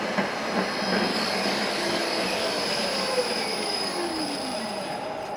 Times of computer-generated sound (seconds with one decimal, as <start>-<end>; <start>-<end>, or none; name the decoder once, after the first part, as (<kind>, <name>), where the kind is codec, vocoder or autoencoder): 1.1-2.5 (codec, DAC); 3.5-4.2